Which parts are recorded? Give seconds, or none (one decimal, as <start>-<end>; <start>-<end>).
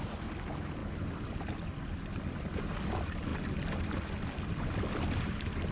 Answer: 0.0-5.7